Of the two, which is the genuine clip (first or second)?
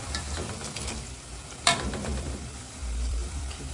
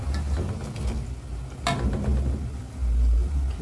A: second